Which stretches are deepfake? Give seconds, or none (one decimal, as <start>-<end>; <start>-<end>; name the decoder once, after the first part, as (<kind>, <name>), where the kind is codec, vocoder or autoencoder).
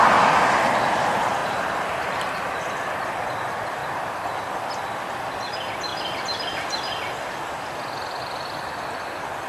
1.4-2.5 (vocoder, BigVGAN v2); 3.8-4.5